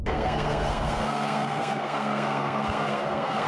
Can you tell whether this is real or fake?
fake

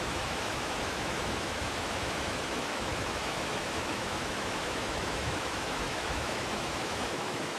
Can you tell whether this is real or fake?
fake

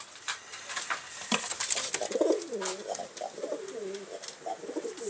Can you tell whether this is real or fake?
real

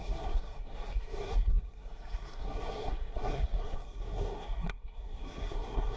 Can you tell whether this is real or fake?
fake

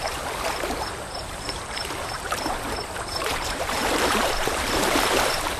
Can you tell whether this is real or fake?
fake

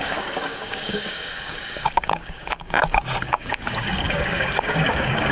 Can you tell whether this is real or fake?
fake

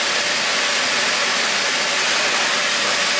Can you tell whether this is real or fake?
real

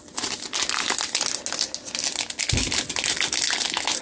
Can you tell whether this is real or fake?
real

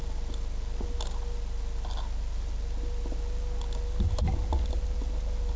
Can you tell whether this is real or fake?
real